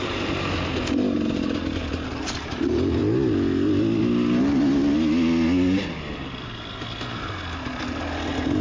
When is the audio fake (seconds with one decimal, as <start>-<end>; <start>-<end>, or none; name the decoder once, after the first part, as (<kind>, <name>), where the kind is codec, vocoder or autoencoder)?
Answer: none